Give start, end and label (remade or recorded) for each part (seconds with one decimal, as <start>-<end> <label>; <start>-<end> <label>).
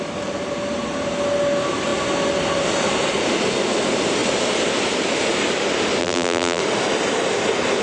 0.0-6.0 recorded; 6.0-6.6 remade; 6.6-7.8 recorded